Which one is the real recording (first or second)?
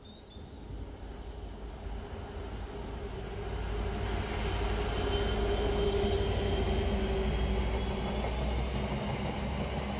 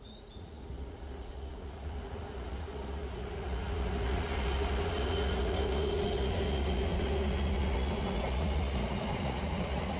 first